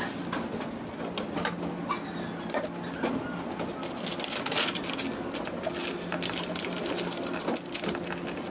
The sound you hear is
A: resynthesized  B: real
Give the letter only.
B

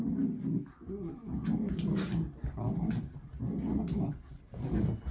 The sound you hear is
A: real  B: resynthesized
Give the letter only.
A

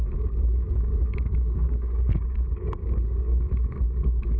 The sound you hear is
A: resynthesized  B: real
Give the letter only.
A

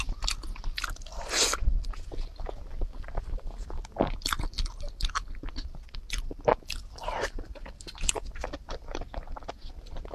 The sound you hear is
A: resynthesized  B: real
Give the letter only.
B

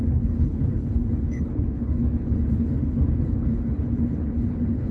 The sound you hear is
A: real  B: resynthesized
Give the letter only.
B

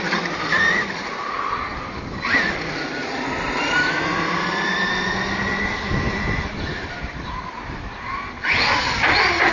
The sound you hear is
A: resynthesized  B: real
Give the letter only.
B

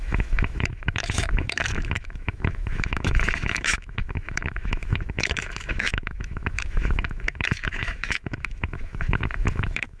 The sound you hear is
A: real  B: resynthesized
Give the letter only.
B